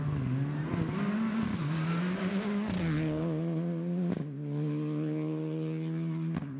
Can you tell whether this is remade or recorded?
recorded